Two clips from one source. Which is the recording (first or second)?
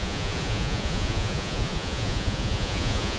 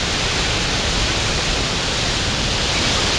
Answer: second